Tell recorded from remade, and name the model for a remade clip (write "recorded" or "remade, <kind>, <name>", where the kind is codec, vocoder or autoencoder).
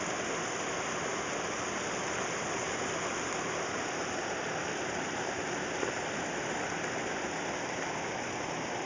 recorded